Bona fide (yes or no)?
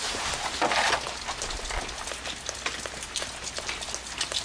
yes